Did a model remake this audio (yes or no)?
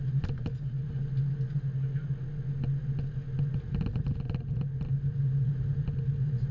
no